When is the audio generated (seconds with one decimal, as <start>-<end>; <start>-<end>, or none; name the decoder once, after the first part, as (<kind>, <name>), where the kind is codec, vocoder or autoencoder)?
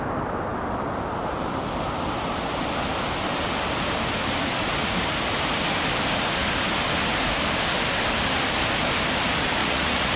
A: 9.6-10.2 (vocoder, Vocos)